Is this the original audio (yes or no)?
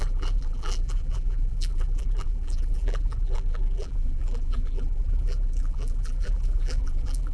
no